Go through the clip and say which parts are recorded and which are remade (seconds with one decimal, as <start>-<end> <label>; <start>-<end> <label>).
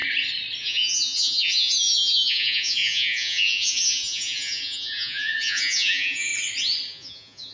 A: 0.0-0.6 recorded; 0.6-6.3 remade; 6.3-6.9 recorded; 6.9-7.5 remade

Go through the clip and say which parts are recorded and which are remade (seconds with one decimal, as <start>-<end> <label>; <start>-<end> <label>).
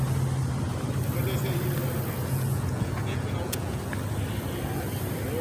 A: 0.0-2.2 recorded; 2.2-3.8 remade; 3.8-5.4 recorded